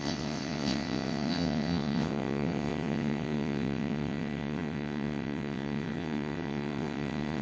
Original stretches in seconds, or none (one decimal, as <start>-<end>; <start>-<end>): none